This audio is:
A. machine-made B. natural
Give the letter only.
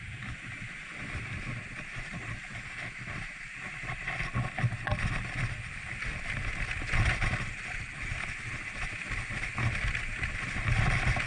B